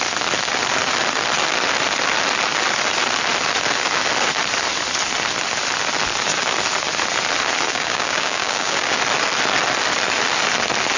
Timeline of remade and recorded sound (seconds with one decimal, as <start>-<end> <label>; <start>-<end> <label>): 0.0-7.7 recorded; 7.7-9.0 remade; 9.0-11.0 recorded